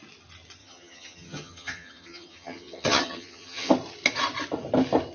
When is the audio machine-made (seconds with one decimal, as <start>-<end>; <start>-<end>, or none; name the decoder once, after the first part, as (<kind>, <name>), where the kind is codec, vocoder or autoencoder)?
0.6-3.7 (vocoder, HiFi-GAN)